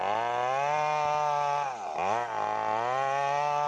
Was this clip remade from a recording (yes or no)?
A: no